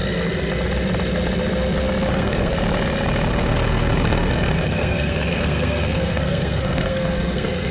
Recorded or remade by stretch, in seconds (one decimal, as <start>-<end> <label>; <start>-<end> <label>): 0.0-2.1 recorded; 2.1-2.5 remade; 2.5-3.3 recorded; 3.3-7.7 remade